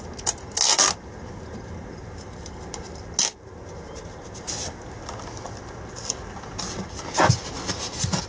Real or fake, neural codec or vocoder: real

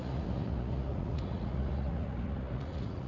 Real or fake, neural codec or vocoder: fake, vocoder, Vocos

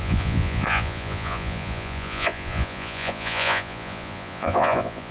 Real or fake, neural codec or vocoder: fake, vocoder, Vocos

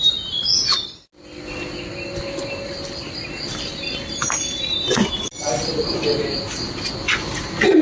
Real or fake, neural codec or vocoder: real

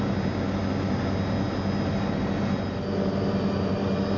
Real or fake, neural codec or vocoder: real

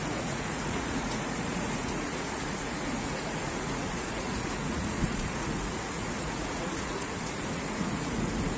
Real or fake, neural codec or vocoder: fake, vocoder, Vocos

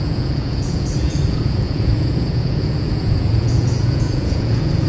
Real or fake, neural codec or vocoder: fake, vocoder, Vocos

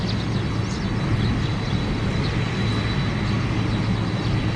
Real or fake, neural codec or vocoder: real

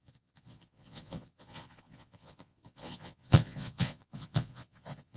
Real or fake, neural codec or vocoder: fake, vocoder, Vocos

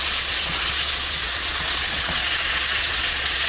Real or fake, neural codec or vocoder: fake, vocoder, Vocos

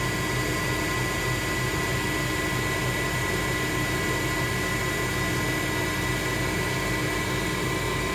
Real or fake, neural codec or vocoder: real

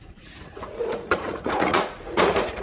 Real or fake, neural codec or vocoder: fake, vocoder, Vocos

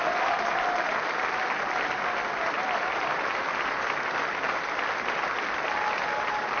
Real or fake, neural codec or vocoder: real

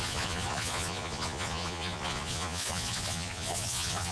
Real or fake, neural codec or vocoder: fake, vocoder, Vocos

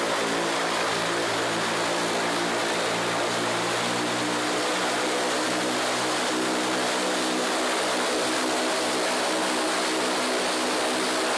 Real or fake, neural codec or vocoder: real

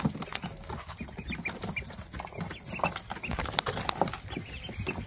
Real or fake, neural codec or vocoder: real